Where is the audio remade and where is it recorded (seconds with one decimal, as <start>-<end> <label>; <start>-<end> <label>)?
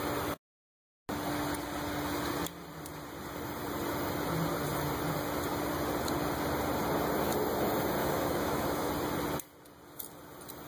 0.0-8.0 recorded; 8.0-8.9 remade; 8.9-10.7 recorded